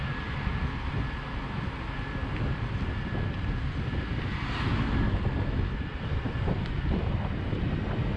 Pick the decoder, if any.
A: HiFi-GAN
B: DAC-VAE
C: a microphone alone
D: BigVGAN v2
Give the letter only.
C